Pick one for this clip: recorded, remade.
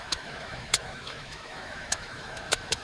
remade